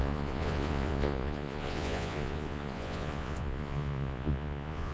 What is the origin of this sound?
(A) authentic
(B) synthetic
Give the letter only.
B